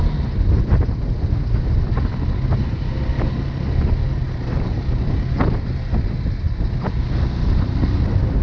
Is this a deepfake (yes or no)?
no